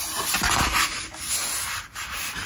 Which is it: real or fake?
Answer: real